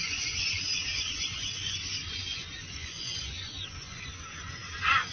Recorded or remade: remade